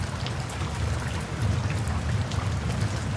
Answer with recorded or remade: recorded